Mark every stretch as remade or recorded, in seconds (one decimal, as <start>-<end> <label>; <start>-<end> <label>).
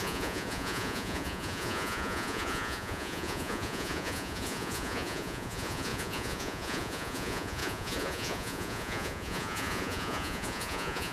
0.0-11.1 remade